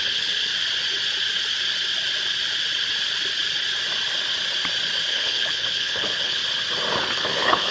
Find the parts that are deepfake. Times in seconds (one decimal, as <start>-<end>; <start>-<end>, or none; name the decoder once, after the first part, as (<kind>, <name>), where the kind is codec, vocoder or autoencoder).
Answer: 0.0-0.5 (codec, HILCodec); 5.1-6.4; 7.0-7.7